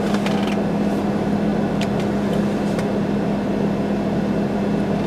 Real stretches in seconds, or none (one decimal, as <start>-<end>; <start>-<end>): 0.0-5.1